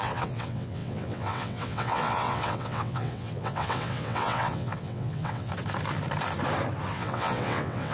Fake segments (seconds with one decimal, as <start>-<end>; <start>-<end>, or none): 0.0-5.5; 6.9-7.9